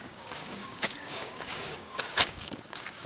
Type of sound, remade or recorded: remade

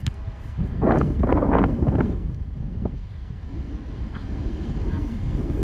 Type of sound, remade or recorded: remade